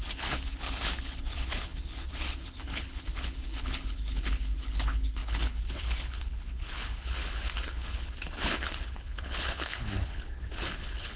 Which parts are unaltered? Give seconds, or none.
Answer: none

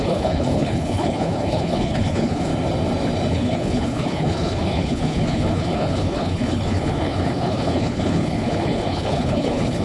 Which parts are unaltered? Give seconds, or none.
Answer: 2.5-3.3

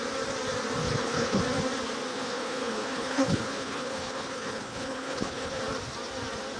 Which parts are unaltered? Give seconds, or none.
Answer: 0.0-0.8; 1.4-2.1; 5.6-6.6

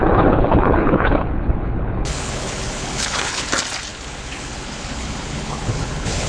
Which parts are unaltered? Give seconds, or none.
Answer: 3.5-3.9

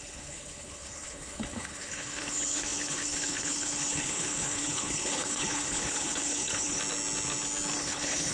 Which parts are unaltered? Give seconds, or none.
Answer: 6.8-7.8

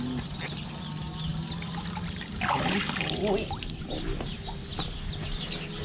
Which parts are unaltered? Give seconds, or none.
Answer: 0.0-5.8